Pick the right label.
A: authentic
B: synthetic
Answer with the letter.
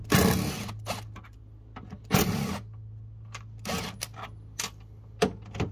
A